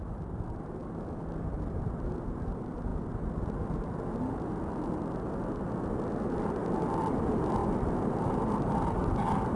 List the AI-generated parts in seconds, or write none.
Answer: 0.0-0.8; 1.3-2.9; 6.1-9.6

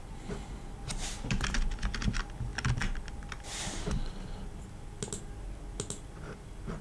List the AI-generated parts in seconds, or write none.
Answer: none